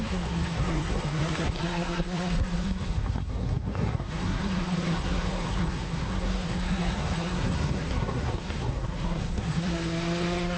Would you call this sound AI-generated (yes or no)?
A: yes